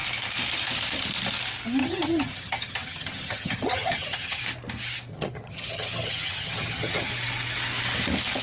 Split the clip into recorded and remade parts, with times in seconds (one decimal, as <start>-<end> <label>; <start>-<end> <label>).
0.0-1.8 recorded; 1.8-4.4 remade; 4.4-5.1 recorded; 5.1-7.1 remade; 7.1-8.4 recorded